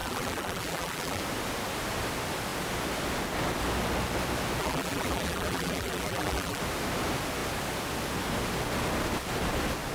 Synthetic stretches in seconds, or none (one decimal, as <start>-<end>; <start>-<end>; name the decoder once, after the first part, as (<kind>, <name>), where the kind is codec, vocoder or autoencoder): 0.0-1.2 (vocoder, BigVGAN v2); 4.6-6.6